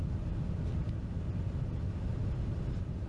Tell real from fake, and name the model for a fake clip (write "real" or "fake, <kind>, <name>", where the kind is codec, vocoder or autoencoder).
real